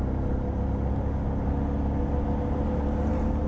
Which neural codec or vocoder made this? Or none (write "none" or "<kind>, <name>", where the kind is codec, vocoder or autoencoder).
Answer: none